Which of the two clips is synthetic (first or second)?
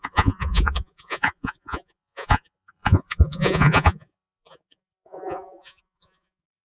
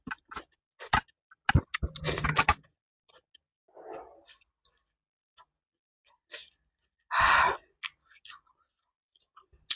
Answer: first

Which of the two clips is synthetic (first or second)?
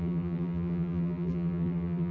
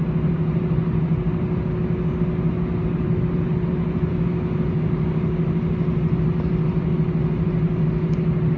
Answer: first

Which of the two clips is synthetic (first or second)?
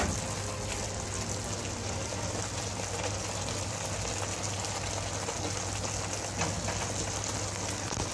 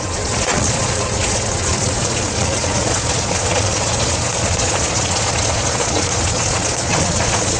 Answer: second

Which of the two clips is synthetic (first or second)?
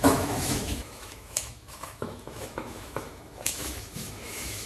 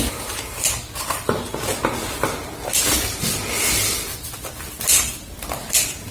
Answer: first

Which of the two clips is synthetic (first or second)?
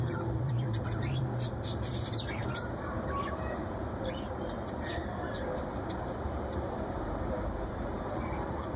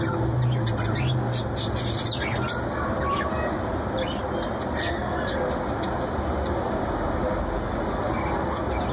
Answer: first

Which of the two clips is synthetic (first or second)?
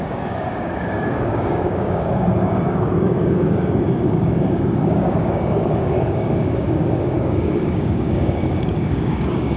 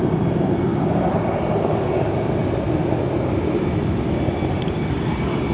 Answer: first